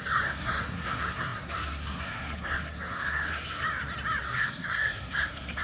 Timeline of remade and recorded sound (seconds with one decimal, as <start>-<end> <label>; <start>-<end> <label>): 0.0-3.6 remade; 3.6-4.2 recorded; 4.2-5.6 remade

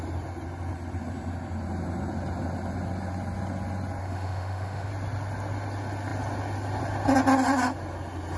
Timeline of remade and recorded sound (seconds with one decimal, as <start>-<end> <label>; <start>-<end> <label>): 0.0-4.0 recorded; 4.0-4.9 remade; 4.9-8.4 recorded

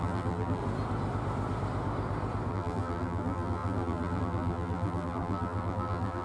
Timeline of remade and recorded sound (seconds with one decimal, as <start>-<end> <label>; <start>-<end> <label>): 0.0-0.6 remade; 0.6-2.5 recorded; 2.5-6.2 remade

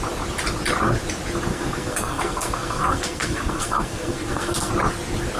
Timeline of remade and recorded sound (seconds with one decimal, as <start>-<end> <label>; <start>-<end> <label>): 0.0-1.5 recorded; 1.5-4.7 remade; 4.7-5.4 recorded

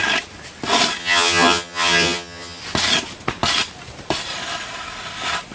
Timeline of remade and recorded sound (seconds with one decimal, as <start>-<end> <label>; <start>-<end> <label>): 0.0-1.0 recorded; 1.0-2.6 remade; 2.6-5.5 recorded